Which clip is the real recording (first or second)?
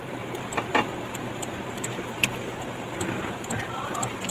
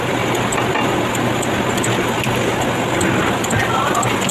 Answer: second